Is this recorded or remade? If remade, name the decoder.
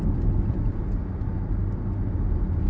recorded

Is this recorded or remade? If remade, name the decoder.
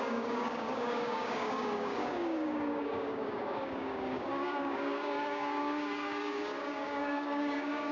remade, codec, DAC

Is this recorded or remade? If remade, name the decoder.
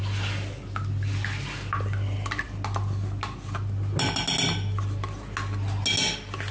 recorded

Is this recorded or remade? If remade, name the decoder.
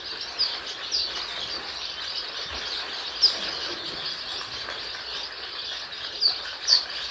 recorded